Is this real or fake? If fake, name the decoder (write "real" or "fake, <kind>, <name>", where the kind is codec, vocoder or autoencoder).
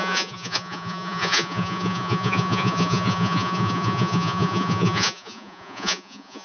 fake, vocoder, Vocos